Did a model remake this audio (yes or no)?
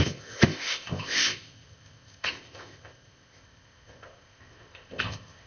yes